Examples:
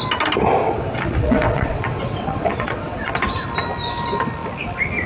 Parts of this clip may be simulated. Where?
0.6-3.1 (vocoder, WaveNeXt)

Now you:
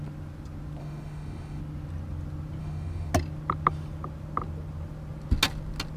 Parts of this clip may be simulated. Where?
0.8-1.6 (autoencoder, DAC-VAE); 2.6-3.1

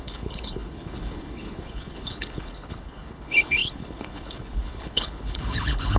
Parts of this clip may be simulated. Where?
0.0-6.0 (codec, HILCodec)

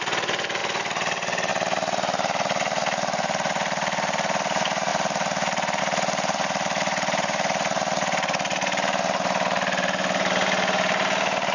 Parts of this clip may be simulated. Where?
0.0-0.6 (vocoder, BigVGAN v2); 1.5-11.5

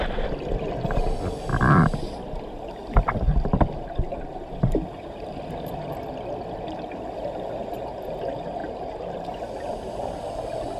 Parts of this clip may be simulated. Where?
none

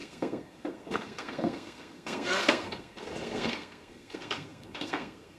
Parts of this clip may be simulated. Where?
0.0-5.4 (codec, SNAC)

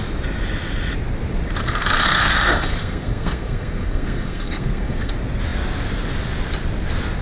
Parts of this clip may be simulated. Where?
1.6-5.1 (codec, SNAC)

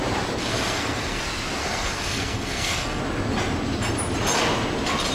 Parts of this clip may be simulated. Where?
0.4-1.2 (codec, SNAC); 1.6-3.0